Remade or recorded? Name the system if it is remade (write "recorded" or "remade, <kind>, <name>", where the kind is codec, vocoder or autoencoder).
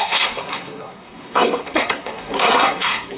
remade, codec, SNAC